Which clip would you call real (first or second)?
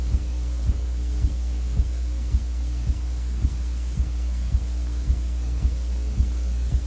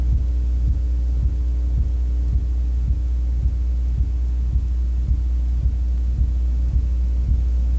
second